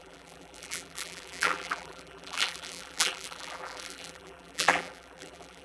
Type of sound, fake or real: fake